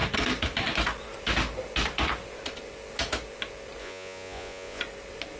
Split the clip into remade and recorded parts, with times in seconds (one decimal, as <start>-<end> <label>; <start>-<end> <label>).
0.0-3.8 recorded; 3.8-4.8 remade; 4.8-5.4 recorded